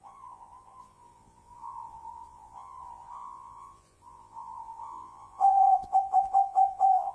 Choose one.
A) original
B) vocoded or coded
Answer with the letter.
B